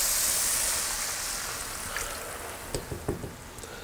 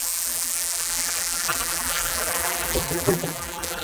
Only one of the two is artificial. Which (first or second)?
second